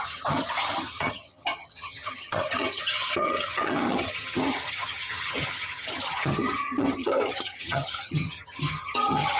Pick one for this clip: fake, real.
fake